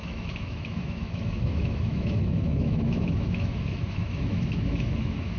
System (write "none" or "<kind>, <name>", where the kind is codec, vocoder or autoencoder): autoencoder, DAC-VAE